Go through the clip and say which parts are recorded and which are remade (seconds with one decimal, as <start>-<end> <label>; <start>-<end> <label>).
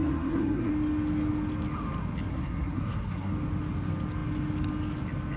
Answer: 0.0-0.7 remade; 0.7-2.3 recorded; 2.3-3.3 remade; 3.3-5.4 recorded